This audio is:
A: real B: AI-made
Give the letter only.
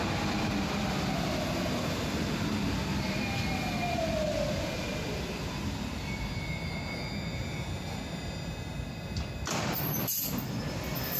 A